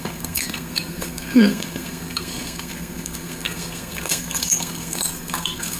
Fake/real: fake